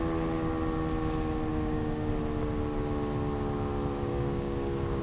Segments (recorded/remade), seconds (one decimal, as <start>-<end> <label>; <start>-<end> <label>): 0.0-1.5 recorded; 1.5-2.1 remade; 2.1-4.1 recorded; 4.1-5.0 remade